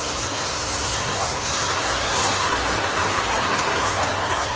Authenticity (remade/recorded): remade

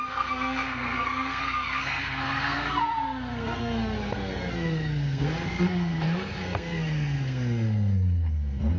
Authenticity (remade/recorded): remade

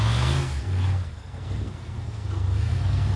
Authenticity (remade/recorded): remade